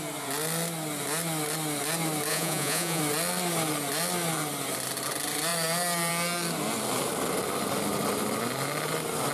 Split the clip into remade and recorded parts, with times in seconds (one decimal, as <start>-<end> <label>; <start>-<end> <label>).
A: 0.0-2.3 recorded; 2.3-3.0 remade; 3.0-9.3 recorded